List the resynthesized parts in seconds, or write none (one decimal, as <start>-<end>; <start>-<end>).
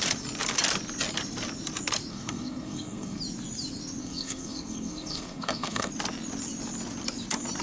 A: 2.1-3.2; 4.0-5.9